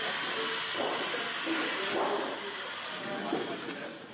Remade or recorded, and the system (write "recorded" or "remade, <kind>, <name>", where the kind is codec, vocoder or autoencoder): recorded